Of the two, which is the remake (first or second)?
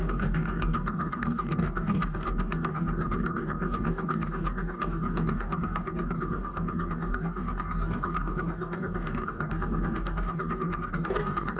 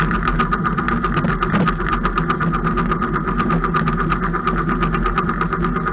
first